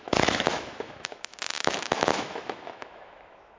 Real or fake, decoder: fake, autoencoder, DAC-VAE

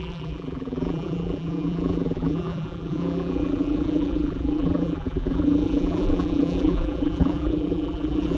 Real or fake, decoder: fake, vocoder, BigVGAN v2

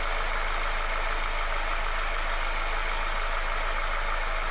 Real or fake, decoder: real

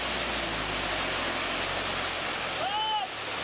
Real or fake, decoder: real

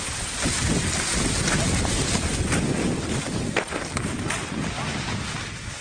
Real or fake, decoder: real